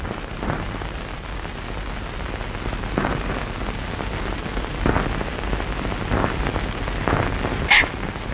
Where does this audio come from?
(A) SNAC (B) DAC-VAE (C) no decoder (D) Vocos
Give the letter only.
C